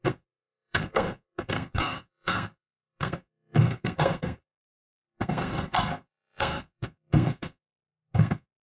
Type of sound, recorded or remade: remade